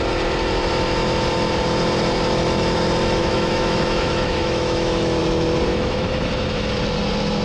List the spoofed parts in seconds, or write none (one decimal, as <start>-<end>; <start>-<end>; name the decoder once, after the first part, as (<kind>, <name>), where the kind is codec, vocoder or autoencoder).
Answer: 3.2-5.2 (autoencoder, DAC-VAE); 5.7-6.3